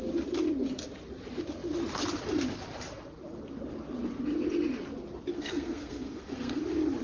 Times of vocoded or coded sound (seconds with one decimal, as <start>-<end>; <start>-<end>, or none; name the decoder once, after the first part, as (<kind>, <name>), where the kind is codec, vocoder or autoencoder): 5.3-6.6 (codec, SNAC)